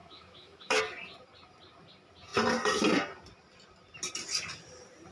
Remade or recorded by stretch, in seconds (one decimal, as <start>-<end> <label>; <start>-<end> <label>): 0.0-0.8 remade; 0.8-5.1 recorded